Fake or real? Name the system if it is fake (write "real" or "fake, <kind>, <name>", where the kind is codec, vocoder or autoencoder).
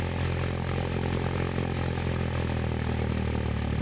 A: real